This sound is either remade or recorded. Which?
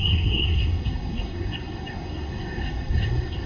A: remade